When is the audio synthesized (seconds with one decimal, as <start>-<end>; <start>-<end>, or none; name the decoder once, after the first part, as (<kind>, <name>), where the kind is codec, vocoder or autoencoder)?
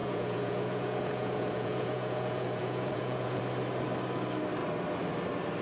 0.0-3.4 (vocoder, Vocos)